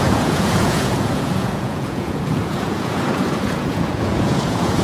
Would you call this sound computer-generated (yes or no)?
yes